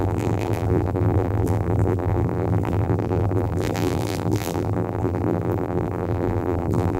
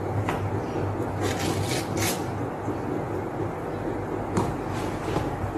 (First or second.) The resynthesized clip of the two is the first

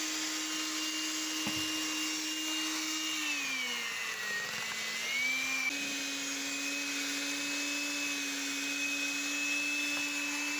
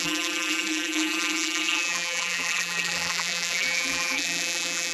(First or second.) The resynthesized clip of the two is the second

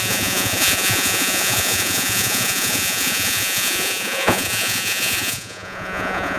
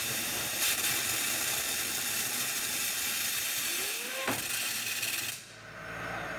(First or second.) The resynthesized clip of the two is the first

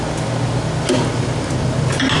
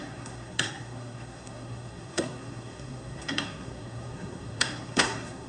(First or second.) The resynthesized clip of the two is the second